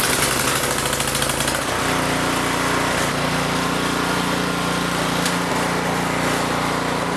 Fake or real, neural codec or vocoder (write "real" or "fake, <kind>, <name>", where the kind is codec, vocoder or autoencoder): real